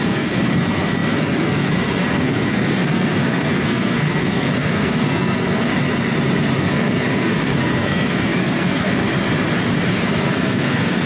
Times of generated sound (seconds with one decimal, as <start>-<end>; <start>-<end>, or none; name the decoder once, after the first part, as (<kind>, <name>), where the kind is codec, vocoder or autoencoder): 0.0-5.7 (codec, SNAC); 6.6-9.1; 10.0-11.1